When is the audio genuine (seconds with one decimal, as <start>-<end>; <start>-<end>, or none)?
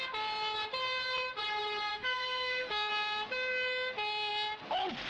0.0-1.9; 2.9-5.1